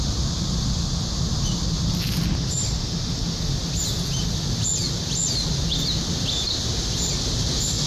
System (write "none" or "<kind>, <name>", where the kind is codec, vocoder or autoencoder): none